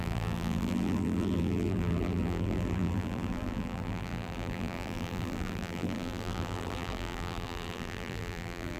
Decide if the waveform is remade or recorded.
remade